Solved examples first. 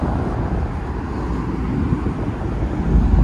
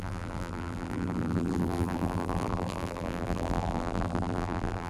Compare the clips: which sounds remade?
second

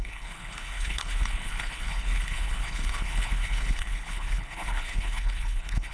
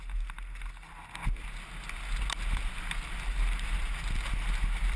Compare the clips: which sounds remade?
first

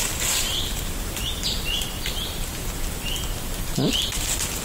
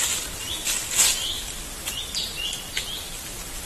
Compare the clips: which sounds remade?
first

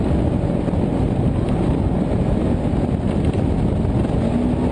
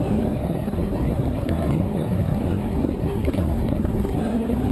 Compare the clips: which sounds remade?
second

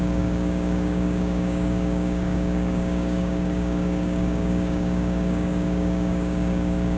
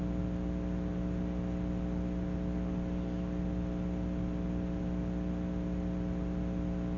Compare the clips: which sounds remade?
first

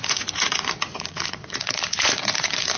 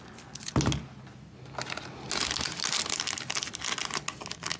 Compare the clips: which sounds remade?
first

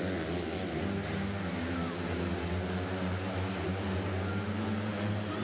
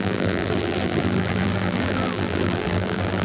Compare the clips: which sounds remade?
second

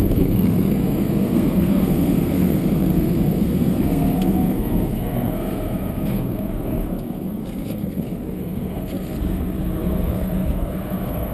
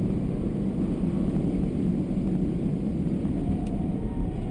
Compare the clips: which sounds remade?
first